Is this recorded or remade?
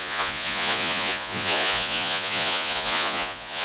remade